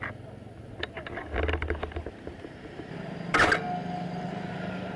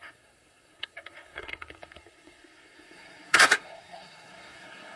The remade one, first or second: second